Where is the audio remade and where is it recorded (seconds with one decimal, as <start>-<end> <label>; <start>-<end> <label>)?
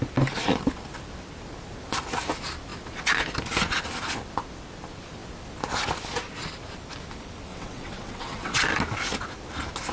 0.0-7.5 recorded; 7.5-8.6 remade; 8.6-9.9 recorded